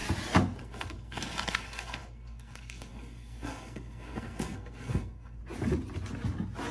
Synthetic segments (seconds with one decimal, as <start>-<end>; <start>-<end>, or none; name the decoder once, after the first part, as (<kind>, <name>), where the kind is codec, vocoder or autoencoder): 0.6-5.4 (codec, SNAC)